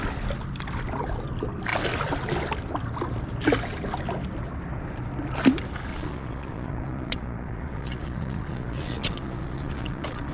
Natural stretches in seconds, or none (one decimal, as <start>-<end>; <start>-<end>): 0.0-5.9